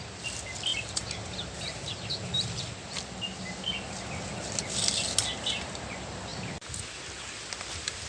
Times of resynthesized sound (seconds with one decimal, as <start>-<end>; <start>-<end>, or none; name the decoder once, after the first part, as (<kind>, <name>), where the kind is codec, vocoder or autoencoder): 0.7-2.6 (vocoder, BigVGAN v2)